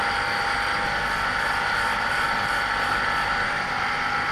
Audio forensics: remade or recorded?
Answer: recorded